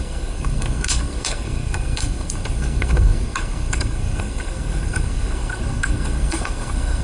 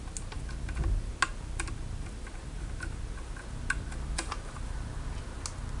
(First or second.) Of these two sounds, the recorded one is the second